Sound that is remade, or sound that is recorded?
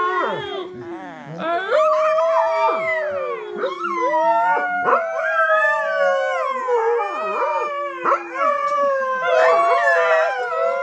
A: recorded